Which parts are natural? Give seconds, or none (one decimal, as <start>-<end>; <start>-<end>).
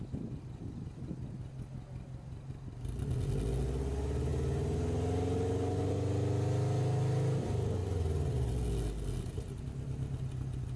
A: 0.0-7.8; 8.5-10.8